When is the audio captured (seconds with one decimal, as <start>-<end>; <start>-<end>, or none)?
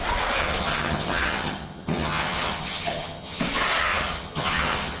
0.0-0.4; 3.4-3.8